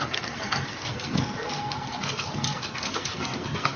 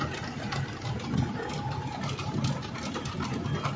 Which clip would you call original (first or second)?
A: second